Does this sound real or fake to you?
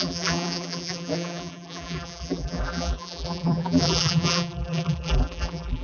fake